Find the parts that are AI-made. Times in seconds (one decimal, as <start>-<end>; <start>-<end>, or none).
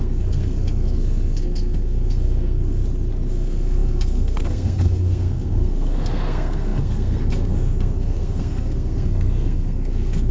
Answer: 0.0-2.8; 3.3-10.3